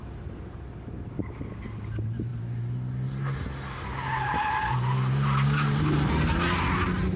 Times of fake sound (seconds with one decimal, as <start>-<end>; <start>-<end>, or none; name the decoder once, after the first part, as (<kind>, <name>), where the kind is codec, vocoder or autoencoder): none

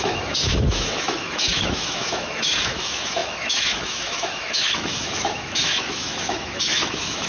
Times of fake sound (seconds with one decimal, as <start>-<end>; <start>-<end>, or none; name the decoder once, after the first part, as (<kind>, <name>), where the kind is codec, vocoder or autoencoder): 0.0-7.3 (autoencoder, DAC-VAE)

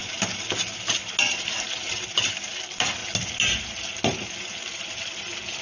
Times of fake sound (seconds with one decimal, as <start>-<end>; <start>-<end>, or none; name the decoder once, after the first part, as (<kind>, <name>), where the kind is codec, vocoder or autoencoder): 1.3-3.0 (vocoder, BigVGAN v2)

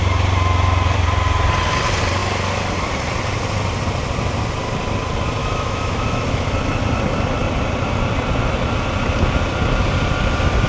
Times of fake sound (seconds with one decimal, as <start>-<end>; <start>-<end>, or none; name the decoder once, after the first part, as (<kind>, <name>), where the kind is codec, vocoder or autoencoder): 5.4-6.4 (autoencoder, DAC-VAE)

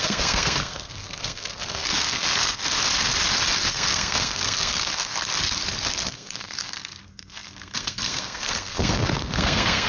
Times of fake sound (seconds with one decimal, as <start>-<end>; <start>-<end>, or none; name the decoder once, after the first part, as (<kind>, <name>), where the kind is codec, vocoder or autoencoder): 0.0-2.6 (codec, SNAC); 3.7-5.1; 6.1-9.9

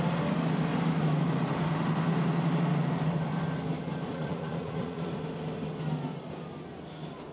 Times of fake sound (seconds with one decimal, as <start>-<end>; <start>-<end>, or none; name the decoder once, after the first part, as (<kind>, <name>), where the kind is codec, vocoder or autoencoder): 4.1-5.1 (vocoder, Vocos)

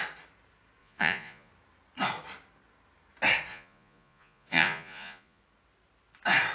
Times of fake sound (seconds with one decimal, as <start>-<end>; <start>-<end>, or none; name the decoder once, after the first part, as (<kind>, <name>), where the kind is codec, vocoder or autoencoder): 0.8-1.5 (vocoder, Vocos); 3.5-5.4